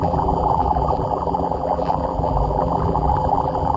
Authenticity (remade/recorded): remade